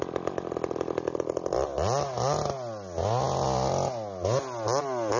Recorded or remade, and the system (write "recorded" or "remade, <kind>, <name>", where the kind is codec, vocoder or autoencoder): recorded